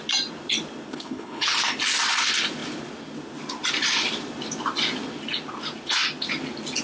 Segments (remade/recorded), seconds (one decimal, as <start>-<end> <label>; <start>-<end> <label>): 0.0-0.9 recorded; 0.9-1.5 remade; 1.5-6.8 recorded